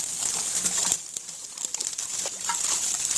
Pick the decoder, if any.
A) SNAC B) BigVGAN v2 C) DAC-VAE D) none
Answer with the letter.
D